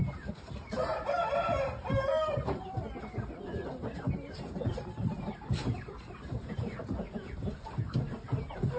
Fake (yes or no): yes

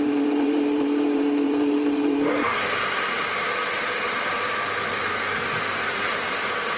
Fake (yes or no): yes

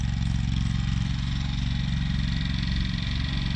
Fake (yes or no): no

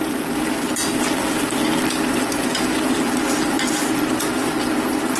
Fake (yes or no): no